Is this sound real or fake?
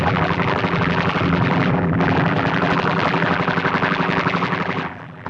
fake